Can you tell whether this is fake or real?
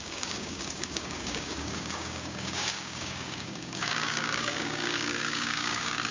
fake